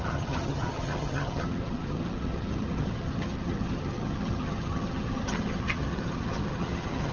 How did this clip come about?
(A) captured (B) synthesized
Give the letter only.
B